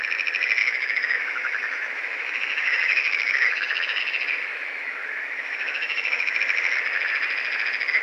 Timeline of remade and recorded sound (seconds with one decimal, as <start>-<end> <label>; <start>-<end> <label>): 0.0-0.6 recorded; 0.6-4.0 remade; 4.0-4.5 recorded; 4.5-6.4 remade; 6.4-8.0 recorded

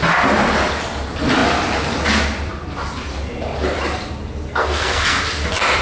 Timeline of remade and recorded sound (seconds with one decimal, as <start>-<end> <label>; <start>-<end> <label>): 0.0-4.5 recorded; 4.5-5.2 remade; 5.2-5.8 recorded

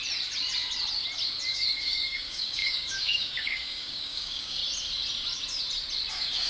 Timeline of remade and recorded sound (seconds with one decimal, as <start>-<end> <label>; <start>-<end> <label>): 0.0-1.5 recorded; 1.5-4.6 remade; 4.6-6.1 recorded; 6.1-6.5 remade

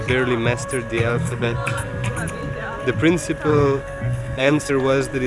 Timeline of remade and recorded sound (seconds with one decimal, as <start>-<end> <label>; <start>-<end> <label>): 0.0-1.1 recorded; 1.1-2.1 remade; 2.1-3.5 recorded; 3.5-4.7 remade; 4.7-5.3 recorded